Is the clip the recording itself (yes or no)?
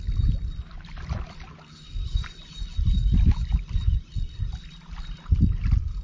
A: no